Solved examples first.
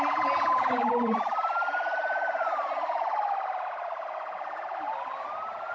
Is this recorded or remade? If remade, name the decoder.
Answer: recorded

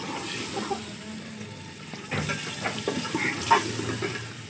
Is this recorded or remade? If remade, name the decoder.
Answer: recorded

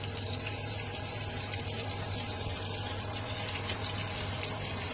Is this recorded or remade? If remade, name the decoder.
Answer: remade, vocoder, BigVGAN v2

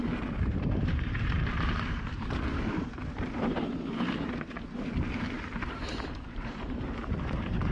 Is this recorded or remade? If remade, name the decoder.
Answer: remade, vocoder, BigVGAN v2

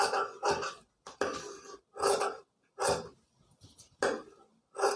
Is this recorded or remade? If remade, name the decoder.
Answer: recorded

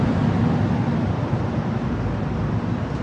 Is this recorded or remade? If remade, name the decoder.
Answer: remade, vocoder, BigVGAN v2